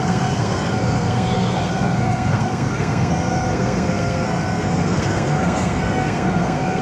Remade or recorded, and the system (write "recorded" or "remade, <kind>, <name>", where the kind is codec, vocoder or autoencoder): remade, codec, SNAC